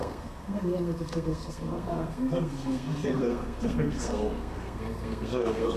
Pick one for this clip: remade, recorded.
remade